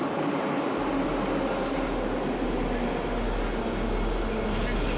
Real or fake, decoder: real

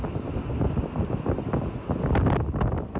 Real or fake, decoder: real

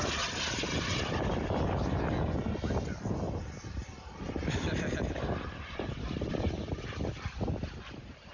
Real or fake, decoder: fake, vocoder, BigVGAN v2